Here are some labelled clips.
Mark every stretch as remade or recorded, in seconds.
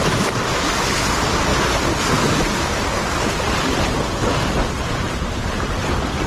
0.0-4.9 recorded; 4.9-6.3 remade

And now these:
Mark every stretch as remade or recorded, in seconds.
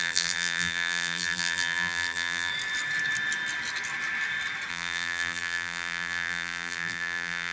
0.0-2.5 remade; 2.5-4.7 recorded; 4.7-7.5 remade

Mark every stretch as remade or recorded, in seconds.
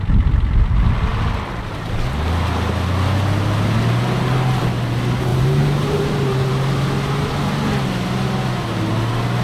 0.0-5.3 recorded; 5.3-6.5 remade; 6.5-9.4 recorded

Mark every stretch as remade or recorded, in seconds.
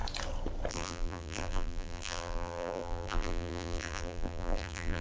0.0-0.7 recorded; 0.7-5.0 remade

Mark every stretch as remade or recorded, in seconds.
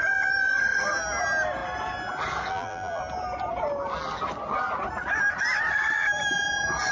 0.0-2.5 recorded; 2.5-3.0 remade; 3.0-6.9 recorded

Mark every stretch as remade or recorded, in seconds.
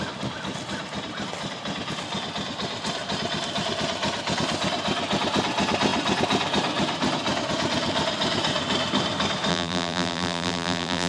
0.0-9.5 recorded; 9.5-11.1 remade